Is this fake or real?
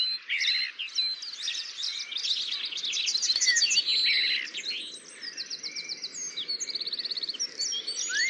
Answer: real